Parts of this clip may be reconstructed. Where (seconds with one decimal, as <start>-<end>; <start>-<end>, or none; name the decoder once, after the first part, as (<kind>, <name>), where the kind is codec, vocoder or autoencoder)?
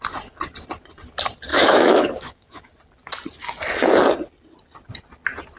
1.5-2.7 (autoencoder, DAC-VAE)